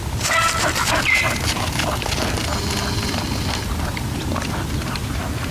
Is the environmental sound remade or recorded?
recorded